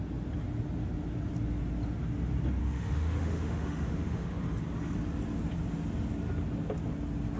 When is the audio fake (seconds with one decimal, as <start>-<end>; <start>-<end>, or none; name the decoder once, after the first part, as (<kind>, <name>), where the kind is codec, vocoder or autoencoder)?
2.6-4.4 (autoencoder, DAC-VAE)